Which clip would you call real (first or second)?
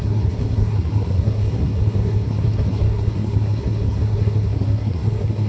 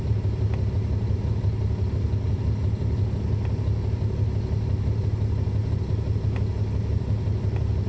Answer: second